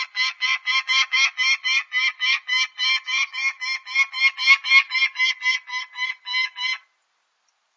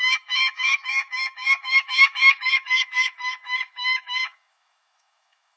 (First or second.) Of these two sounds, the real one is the first